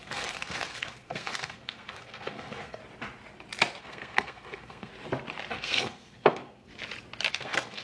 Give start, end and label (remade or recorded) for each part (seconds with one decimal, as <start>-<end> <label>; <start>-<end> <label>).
0.0-2.8 remade; 2.8-3.8 recorded; 3.8-4.9 remade; 4.9-5.5 recorded; 5.5-6.7 remade; 6.7-7.3 recorded; 7.3-7.8 remade